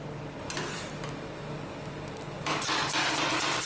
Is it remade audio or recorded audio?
recorded